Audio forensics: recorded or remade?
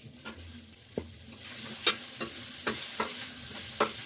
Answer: recorded